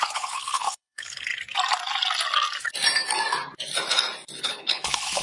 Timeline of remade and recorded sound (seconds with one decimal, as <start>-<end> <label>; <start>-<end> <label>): 0.0-1.3 remade; 1.3-4.4 recorded; 4.4-5.2 remade